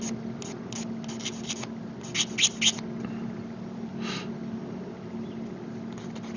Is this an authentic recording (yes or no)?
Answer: yes